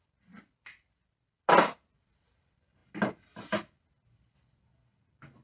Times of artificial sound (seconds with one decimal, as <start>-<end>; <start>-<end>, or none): none